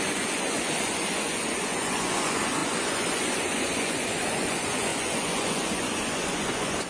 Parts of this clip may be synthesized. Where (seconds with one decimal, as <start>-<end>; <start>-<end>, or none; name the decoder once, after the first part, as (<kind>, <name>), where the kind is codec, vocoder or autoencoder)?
0.0-6.9 (vocoder, Vocos)